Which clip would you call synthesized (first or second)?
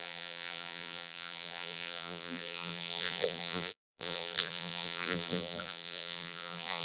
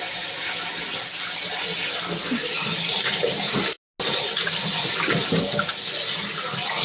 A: first